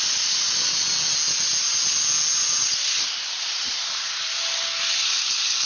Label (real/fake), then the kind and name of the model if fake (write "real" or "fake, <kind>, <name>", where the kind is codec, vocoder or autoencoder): real